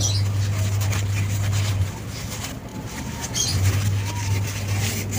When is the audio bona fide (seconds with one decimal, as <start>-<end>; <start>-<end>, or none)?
0.0-2.7; 3.7-5.2